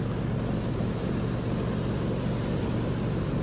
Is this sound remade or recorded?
recorded